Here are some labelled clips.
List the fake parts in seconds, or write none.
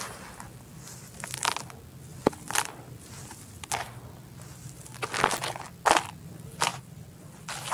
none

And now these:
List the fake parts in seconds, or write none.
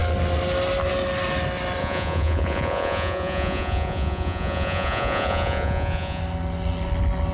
1.8-6.2 (vocoder, Vocos)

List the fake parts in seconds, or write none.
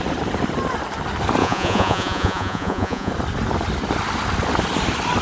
1.4-3.1 (vocoder, Vocos)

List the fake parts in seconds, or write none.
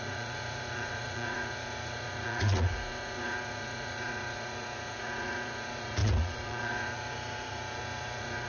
0.0-8.5 (vocoder, Vocos)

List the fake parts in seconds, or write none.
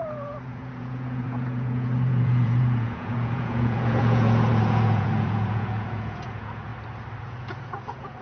0.0-6.7 (vocoder, Vocos); 7.2-8.2